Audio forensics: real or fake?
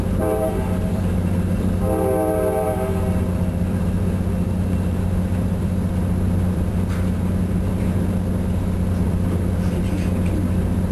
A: fake